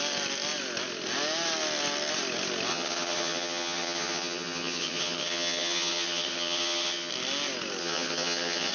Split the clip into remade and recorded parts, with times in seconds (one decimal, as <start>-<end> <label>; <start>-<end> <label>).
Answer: 0.0-2.7 recorded; 2.7-7.1 remade; 7.1-7.8 recorded; 7.8-8.7 remade